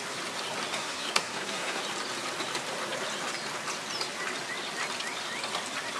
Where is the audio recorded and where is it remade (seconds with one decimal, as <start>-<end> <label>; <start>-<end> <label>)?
0.0-0.8 recorded; 0.8-1.8 remade; 1.8-6.0 recorded